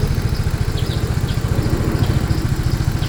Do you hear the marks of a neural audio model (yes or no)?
no